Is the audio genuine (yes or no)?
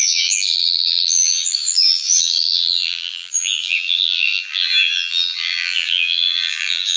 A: no